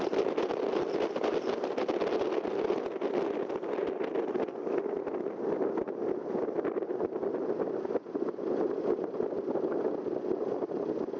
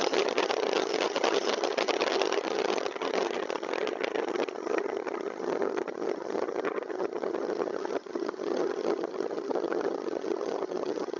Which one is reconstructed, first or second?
second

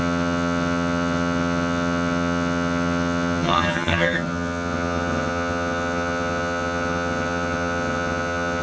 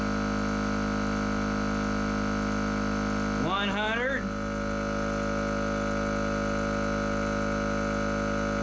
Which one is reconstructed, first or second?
first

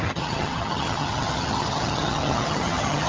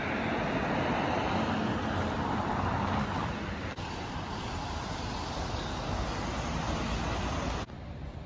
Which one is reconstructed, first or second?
first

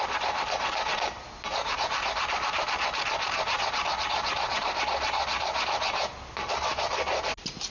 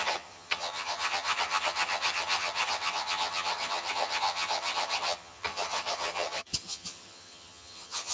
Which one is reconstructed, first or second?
second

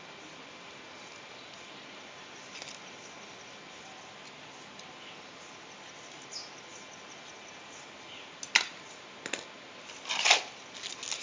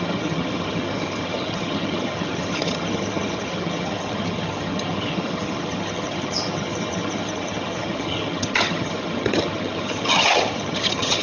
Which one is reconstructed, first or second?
second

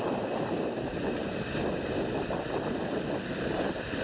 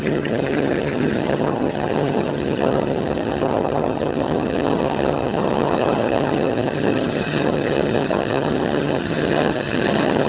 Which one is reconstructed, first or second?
second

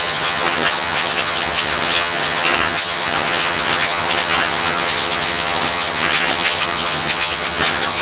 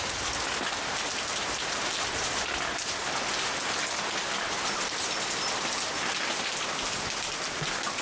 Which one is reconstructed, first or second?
first